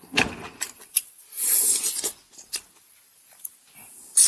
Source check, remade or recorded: recorded